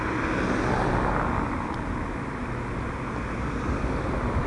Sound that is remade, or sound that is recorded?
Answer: recorded